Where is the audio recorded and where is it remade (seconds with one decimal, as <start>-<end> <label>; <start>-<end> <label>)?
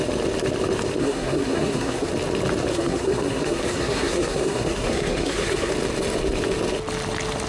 0.0-1.0 recorded; 1.0-2.1 remade; 2.1-2.7 recorded; 2.7-5.7 remade; 5.7-7.5 recorded